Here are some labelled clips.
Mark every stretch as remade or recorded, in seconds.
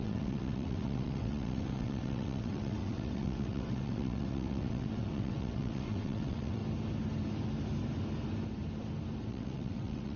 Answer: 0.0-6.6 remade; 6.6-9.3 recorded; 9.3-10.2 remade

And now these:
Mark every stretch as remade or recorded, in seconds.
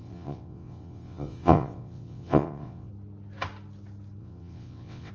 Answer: 0.0-2.9 remade; 2.9-4.2 recorded; 4.2-5.1 remade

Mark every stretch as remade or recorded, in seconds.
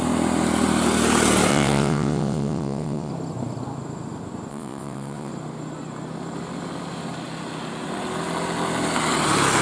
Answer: 0.0-1.5 recorded; 1.5-3.1 remade; 3.1-4.5 recorded; 4.5-5.3 remade; 5.3-9.6 recorded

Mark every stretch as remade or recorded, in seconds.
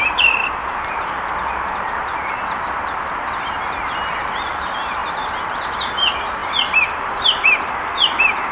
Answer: 0.0-8.5 recorded